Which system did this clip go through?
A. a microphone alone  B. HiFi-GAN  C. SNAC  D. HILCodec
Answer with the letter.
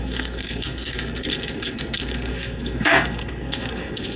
C